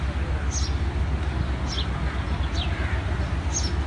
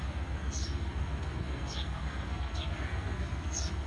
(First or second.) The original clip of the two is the first